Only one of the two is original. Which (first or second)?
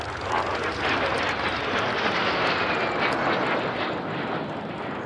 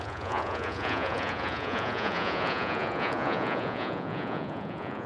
first